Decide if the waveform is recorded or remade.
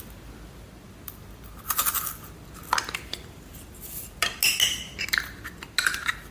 recorded